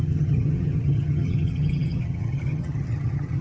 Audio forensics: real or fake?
fake